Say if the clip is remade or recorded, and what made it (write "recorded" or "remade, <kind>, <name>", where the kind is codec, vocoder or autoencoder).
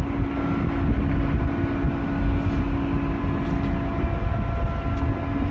recorded